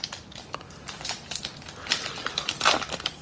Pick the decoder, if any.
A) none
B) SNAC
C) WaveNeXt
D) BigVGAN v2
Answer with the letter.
A